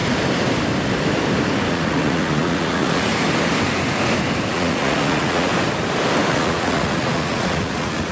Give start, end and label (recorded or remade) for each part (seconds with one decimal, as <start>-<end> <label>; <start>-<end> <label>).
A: 0.0-1.7 recorded; 1.7-3.1 remade; 3.1-4.5 recorded; 4.5-5.5 remade; 5.5-6.3 recorded; 6.3-8.1 remade